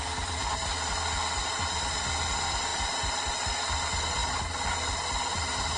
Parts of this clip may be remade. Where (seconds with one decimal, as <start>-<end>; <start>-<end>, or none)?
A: none